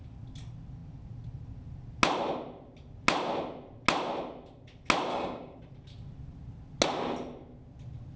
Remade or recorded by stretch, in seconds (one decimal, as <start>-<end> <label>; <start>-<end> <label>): 0.0-5.1 recorded; 5.1-5.6 remade; 5.6-8.2 recorded